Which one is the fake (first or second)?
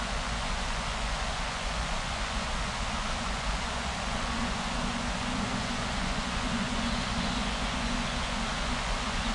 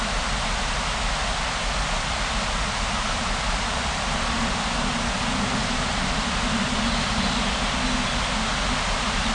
first